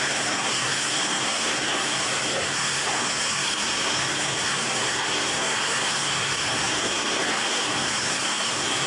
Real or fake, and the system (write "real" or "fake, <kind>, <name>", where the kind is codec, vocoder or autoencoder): fake, codec, SNAC